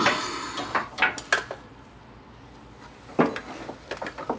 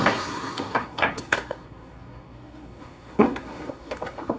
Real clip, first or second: first